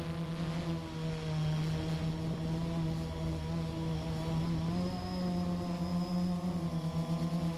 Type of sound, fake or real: real